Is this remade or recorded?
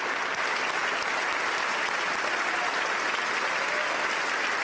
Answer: recorded